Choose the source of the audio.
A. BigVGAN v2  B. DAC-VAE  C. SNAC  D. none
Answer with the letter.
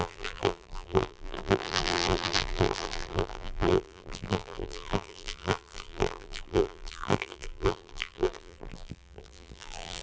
A